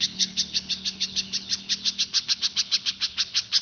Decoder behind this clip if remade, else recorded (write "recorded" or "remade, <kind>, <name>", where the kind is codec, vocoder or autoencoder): remade, codec, HILCodec